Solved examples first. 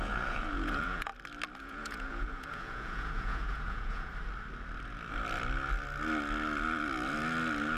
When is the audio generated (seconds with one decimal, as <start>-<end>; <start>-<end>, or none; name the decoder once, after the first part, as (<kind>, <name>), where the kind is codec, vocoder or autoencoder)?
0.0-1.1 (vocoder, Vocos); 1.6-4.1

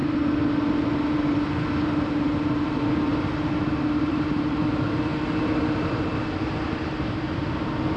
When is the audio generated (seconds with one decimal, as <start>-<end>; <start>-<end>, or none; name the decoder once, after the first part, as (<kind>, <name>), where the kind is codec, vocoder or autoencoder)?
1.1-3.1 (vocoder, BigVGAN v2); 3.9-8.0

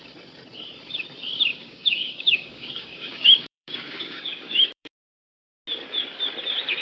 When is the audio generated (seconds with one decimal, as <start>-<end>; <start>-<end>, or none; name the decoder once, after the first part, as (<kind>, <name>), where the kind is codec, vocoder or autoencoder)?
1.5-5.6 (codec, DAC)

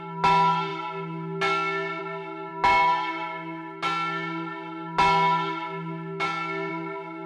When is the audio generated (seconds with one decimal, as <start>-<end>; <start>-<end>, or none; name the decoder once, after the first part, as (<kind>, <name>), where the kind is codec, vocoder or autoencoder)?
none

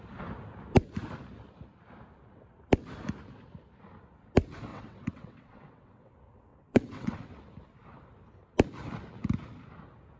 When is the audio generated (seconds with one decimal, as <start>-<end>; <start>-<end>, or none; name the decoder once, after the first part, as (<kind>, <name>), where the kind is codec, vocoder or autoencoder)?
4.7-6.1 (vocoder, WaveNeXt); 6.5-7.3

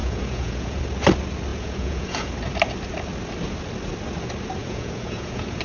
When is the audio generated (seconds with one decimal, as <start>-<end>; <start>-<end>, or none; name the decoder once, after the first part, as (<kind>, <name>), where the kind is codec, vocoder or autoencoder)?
0.0-0.8 (vocoder, Vocos); 1.5-2.3; 4.6-5.6